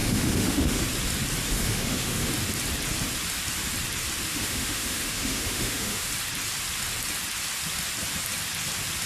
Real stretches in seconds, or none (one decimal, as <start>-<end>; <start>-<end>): 0.8-1.5; 2.3-4.3; 6.1-9.1